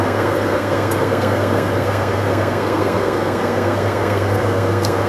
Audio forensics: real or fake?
fake